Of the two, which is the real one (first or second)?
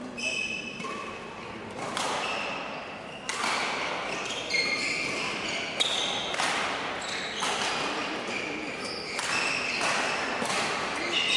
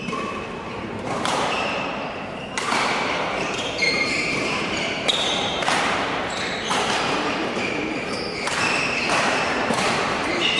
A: first